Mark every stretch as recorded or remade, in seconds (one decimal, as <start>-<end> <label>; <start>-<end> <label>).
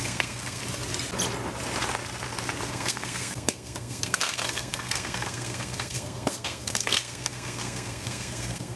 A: 0.0-0.6 remade; 0.6-2.7 recorded; 2.7-8.8 remade